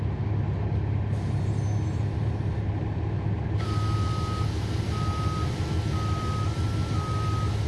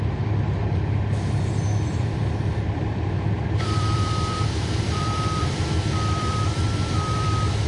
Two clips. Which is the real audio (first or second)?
first